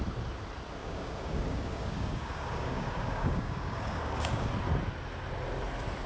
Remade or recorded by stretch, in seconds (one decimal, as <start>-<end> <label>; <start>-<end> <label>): 0.0-0.8 recorded; 0.8-4.5 remade; 4.5-6.1 recorded